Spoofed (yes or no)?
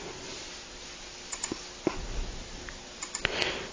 no